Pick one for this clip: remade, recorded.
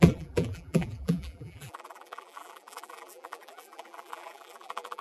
remade